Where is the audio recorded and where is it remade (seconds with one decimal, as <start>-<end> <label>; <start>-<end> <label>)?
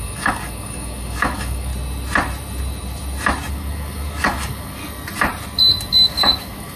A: 0.0-1.7 remade; 1.7-3.5 recorded; 3.5-4.8 remade; 4.8-5.9 recorded; 5.9-6.8 remade